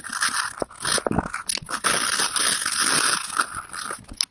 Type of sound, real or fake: real